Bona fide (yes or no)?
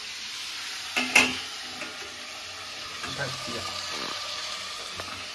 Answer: yes